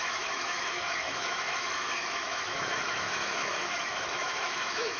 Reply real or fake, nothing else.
fake